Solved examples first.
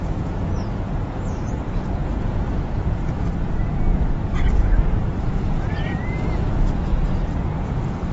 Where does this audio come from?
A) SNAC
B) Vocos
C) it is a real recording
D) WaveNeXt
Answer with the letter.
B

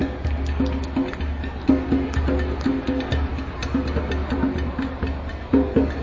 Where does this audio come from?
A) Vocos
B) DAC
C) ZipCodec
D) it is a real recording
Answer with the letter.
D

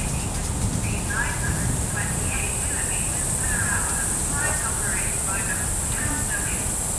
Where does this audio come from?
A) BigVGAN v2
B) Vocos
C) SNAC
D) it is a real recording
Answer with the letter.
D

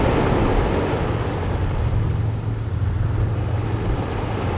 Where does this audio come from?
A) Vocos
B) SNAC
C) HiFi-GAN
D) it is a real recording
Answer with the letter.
D